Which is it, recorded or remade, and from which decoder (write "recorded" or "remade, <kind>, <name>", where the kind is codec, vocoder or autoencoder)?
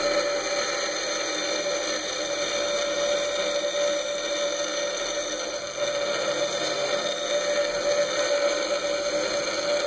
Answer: recorded